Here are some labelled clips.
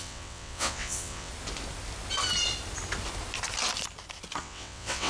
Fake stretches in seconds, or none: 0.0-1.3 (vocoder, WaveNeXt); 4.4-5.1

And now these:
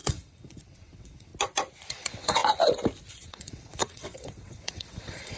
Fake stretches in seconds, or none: 0.0-1.3 (vocoder, WaveNeXt); 1.9-2.4; 3.1-5.4

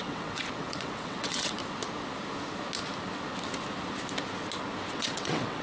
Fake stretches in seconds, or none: 0.0-1.6 (vocoder, WaveNeXt); 4.9-5.6

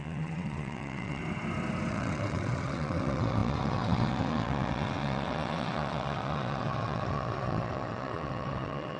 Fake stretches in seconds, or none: 0.0-1.2 (vocoder, WaveNeXt); 1.9-9.0

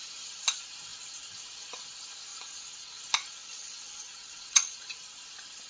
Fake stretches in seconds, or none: 2.3-3.0 (vocoder, WaveNeXt); 3.4-5.0

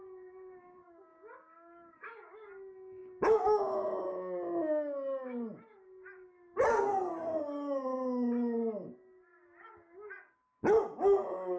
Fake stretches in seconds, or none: none